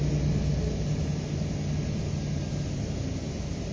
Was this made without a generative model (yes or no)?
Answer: yes